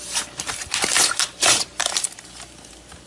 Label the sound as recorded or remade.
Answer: remade